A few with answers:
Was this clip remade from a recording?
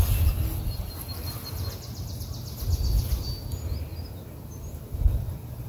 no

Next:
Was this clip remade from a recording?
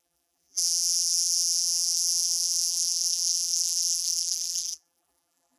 yes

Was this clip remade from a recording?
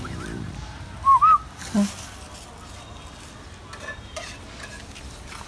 no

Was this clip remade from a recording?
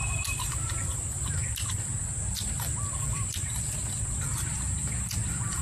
yes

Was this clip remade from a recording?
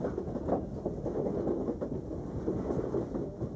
no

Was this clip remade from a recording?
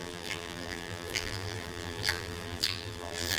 yes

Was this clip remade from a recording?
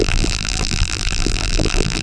yes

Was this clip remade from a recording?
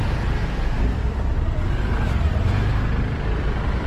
no